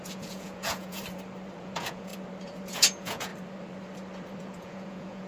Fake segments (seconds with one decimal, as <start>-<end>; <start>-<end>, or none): 0.0-1.0; 1.6-2.1; 2.7-3.3; 4.4-5.3